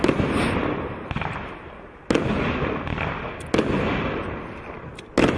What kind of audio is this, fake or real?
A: real